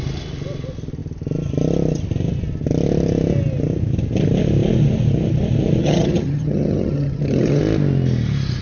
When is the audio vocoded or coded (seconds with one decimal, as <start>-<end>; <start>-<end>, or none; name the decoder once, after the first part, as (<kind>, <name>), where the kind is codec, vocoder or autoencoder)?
5.8-7.6 (vocoder, HiFi-GAN)